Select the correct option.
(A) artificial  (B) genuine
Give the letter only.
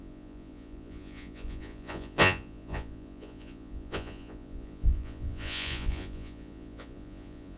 A